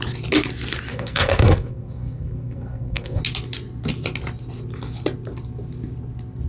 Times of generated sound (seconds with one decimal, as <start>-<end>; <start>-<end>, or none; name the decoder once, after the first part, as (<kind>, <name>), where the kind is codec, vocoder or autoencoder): 0.9-3.2 (codec, SNAC)